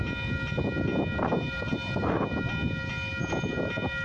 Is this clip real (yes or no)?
yes